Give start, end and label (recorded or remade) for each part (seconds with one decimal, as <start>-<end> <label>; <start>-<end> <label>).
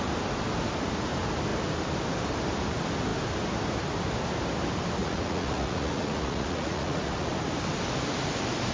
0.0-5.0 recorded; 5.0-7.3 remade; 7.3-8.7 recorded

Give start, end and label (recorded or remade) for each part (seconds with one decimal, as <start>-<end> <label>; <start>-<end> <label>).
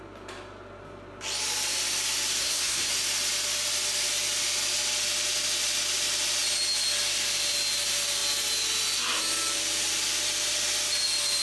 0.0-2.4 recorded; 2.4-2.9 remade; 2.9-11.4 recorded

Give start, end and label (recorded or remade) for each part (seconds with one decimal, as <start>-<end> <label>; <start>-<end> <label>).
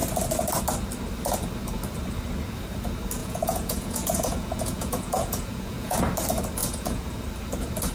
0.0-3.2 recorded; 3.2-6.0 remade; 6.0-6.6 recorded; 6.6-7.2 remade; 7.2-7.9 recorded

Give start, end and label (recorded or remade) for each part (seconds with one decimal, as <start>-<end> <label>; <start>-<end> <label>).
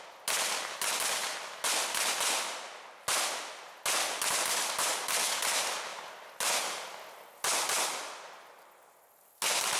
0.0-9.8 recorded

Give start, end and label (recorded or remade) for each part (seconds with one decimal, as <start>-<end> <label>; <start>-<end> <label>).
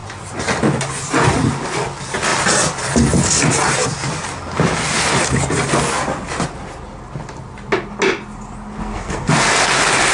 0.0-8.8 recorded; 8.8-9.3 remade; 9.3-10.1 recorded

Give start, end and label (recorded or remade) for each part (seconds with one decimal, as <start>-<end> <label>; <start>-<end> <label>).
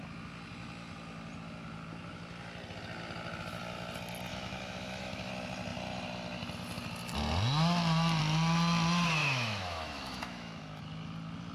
0.0-4.3 recorded; 4.3-5.3 remade; 5.3-9.2 recorded; 9.2-10.8 remade; 10.8-11.5 recorded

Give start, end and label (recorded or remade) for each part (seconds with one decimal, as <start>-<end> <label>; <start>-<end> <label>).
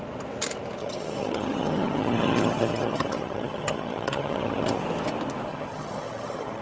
0.0-0.8 recorded; 0.8-4.8 remade; 4.8-5.5 recorded; 5.5-6.6 remade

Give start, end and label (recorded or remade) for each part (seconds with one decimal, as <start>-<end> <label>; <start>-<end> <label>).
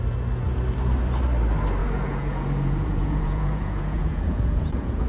0.0-1.8 recorded; 1.8-5.1 remade